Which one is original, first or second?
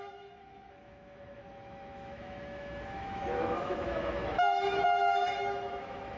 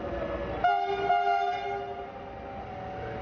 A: second